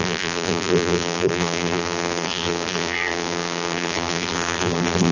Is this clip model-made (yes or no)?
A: yes